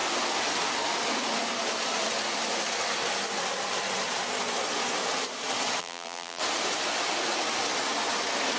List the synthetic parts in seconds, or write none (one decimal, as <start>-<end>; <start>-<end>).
5.8-6.4